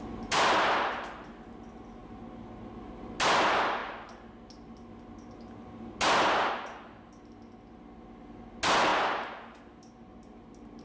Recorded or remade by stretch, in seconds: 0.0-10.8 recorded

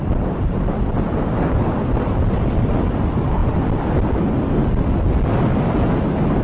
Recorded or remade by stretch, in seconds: 0.0-6.4 recorded

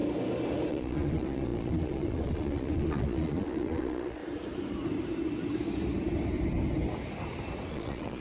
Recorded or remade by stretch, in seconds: 0.0-0.7 recorded; 0.7-4.2 remade; 4.2-7.7 recorded; 7.7-8.2 remade

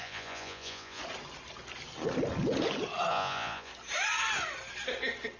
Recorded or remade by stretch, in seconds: 0.0-1.0 remade; 1.0-3.1 recorded; 3.1-3.7 remade; 3.7-5.4 recorded

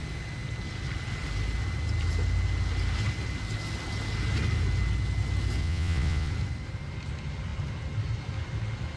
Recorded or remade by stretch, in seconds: 0.0-5.6 recorded; 5.6-6.3 remade; 6.3-9.0 recorded

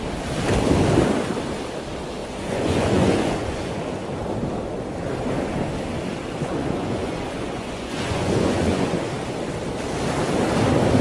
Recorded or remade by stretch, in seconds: 0.0-2.2 recorded; 2.2-3.8 remade; 3.8-6.4 recorded; 6.4-9.0 remade; 9.0-11.0 recorded